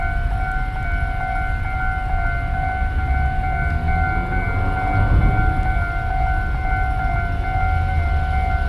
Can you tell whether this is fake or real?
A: real